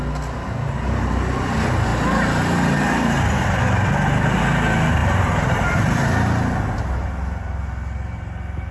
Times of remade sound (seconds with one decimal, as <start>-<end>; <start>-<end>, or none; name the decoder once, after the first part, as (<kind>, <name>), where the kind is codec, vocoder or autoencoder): 3.3-3.9 (vocoder, BigVGAN v2); 5.0-6.4